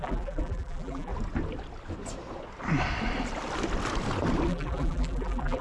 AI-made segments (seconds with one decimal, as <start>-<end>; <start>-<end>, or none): 0.0-1.1; 4.5-5.6